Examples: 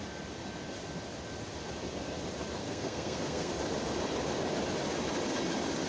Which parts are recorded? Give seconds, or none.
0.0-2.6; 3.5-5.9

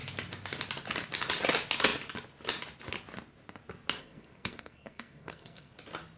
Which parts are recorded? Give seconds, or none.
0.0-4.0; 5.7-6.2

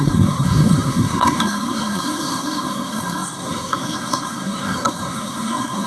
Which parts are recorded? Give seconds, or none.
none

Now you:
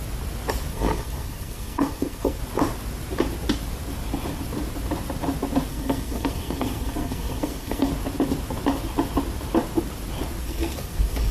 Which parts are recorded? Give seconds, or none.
0.0-0.7; 2.4-5.7; 7.9-10.4

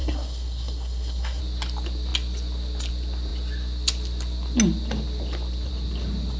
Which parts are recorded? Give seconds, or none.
1.4-6.4

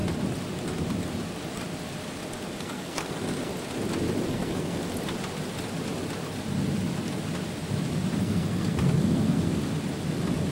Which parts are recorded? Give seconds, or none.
0.0-2.6; 3.5-4.3; 4.8-8.2; 9.6-10.5

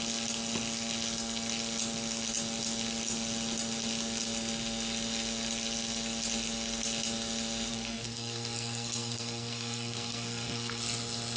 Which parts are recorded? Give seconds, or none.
0.0-7.7; 10.8-11.4

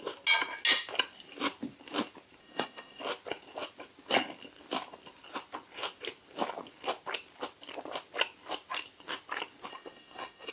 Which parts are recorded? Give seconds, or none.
0.0-2.4; 3.0-9.7